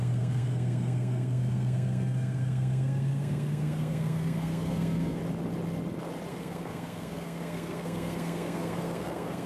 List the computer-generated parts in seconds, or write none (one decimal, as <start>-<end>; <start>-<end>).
0.0-5.2; 6.3-9.5